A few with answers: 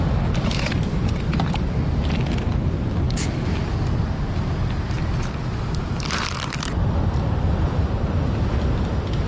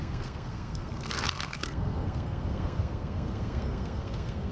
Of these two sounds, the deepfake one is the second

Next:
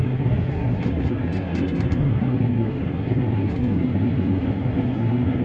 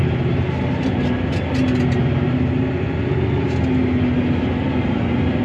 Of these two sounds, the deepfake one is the first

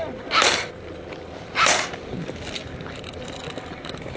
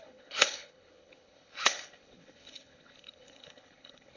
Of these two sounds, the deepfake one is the second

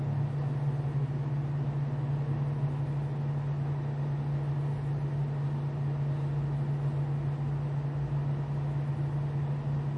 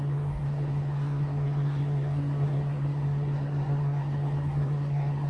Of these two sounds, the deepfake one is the second